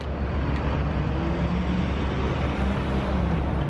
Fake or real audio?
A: real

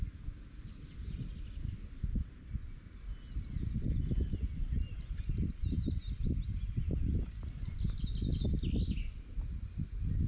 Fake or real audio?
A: real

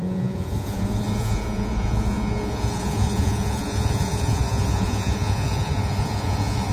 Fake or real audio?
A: fake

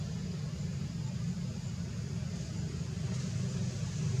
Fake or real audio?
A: real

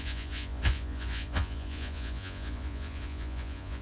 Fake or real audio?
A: fake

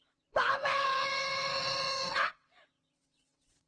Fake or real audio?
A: fake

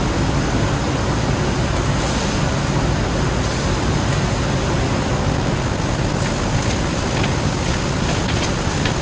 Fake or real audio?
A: real